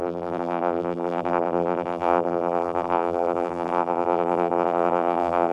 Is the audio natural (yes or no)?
no